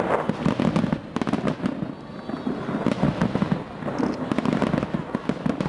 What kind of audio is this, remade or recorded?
recorded